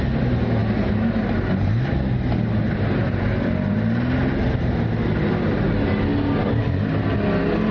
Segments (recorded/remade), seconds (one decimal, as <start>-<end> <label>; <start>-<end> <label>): 0.0-7.7 recorded